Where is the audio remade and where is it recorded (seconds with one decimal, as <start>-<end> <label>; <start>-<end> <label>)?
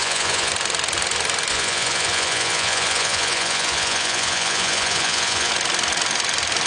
0.0-0.5 remade; 0.5-1.5 recorded; 1.5-5.5 remade; 5.5-6.7 recorded